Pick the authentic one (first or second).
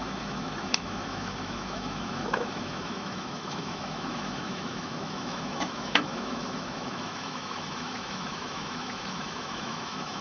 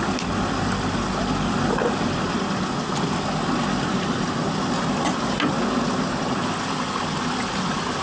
second